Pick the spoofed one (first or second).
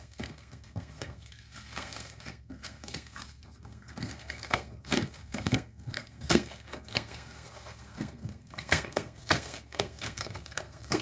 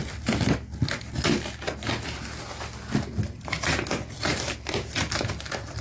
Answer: first